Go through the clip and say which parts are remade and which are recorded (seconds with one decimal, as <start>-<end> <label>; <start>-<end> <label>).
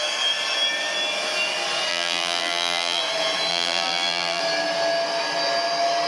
0.0-1.9 recorded; 1.9-3.0 remade; 3.0-3.5 recorded; 3.5-4.4 remade; 4.4-6.1 recorded